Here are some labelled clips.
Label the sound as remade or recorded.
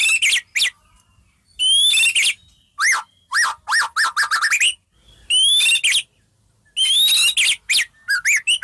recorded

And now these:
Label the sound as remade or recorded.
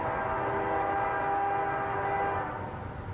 recorded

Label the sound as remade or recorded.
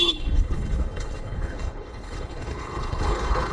remade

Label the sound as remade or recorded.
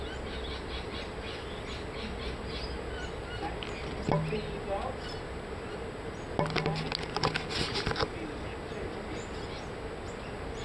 recorded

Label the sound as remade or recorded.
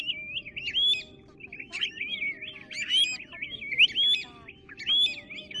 recorded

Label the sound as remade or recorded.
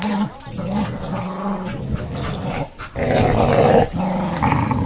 recorded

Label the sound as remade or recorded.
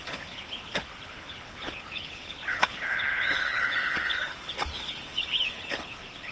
remade